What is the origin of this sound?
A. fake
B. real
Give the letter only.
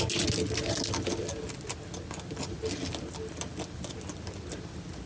B